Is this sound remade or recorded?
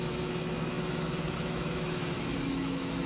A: remade